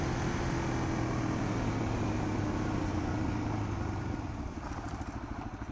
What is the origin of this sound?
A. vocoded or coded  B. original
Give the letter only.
B